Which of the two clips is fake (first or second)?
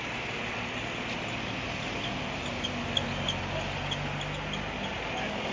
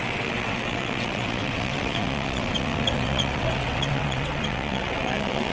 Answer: second